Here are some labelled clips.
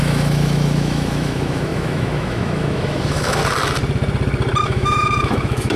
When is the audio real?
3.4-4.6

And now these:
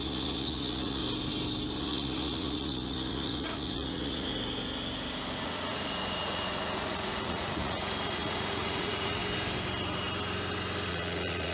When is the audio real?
1.0-1.8; 4.3-5.4; 9.2-10.9

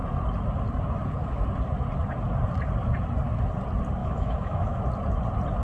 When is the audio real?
0.0-4.0; 4.8-5.6